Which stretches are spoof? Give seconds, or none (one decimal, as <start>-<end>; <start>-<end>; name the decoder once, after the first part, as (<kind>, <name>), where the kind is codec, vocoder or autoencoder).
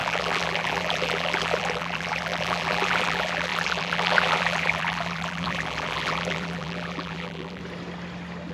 0.0-7.6 (vocoder, BigVGAN v2)